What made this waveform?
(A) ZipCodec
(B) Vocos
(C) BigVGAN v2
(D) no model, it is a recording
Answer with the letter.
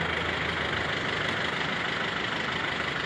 D